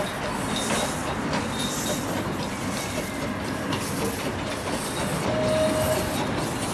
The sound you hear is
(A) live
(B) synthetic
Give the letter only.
A